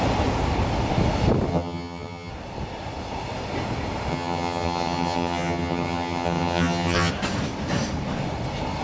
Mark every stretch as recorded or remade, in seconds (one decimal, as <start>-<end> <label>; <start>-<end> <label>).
0.0-1.5 recorded; 1.5-2.3 remade; 2.3-4.1 recorded; 4.1-7.1 remade; 7.1-8.8 recorded